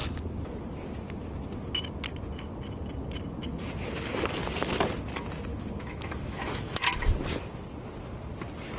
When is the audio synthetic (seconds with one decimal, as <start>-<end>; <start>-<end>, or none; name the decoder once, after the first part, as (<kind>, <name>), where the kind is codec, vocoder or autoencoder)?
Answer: 5.5-6.8 (autoencoder, DAC-VAE)